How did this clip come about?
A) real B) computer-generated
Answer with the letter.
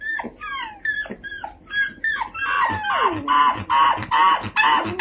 A